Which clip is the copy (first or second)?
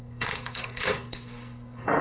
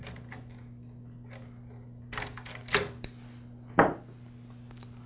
first